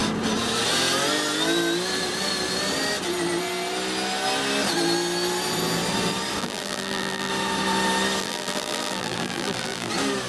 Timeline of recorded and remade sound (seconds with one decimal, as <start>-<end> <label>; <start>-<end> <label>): 0.0-6.4 recorded; 6.4-7.3 remade; 7.3-8.2 recorded; 8.2-9.9 remade; 9.9-10.3 recorded